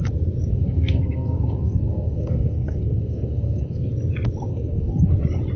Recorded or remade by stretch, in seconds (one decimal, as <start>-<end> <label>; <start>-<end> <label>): 0.0-0.5 recorded; 0.5-3.9 remade; 3.9-4.5 recorded; 4.5-5.1 remade; 5.1-5.6 recorded

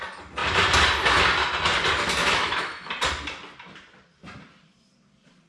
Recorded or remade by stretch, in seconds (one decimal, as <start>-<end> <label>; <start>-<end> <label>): 0.0-2.2 recorded; 2.2-2.9 remade; 2.9-5.5 recorded

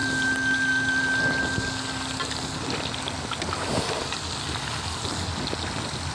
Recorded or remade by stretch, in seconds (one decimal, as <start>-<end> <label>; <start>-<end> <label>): 0.0-6.1 recorded

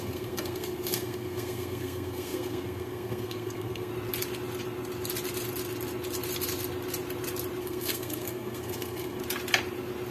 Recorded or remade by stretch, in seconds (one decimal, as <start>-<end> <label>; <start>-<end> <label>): 0.0-3.9 remade; 3.9-7.6 recorded; 7.6-9.2 remade; 9.2-10.1 recorded

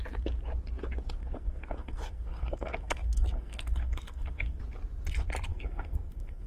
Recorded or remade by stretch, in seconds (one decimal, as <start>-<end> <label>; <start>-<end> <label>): 0.0-1.2 recorded; 1.2-4.6 remade; 4.6-5.5 recorded; 5.5-6.5 remade

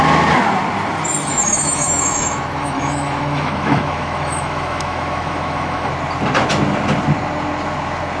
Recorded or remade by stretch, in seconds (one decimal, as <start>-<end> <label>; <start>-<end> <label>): 0.0-1.3 recorded; 1.3-5.9 remade; 5.9-8.2 recorded

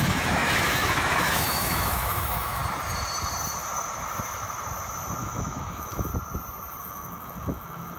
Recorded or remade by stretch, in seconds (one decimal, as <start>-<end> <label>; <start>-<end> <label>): 0.0-2.6 remade; 2.6-5.2 recorded; 5.2-6.1 remade; 6.1-6.8 recorded; 6.8-8.0 remade

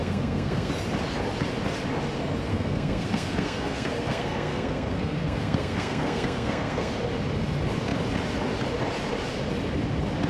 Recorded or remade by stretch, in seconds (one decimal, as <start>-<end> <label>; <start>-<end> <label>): 0.0-0.7 remade; 0.7-2.5 recorded; 2.5-6.9 remade; 6.9-10.3 recorded